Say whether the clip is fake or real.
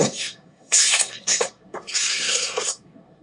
fake